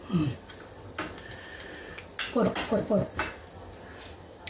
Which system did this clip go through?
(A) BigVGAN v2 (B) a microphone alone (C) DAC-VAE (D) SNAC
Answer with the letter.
B